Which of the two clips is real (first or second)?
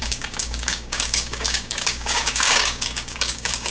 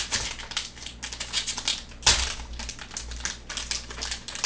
second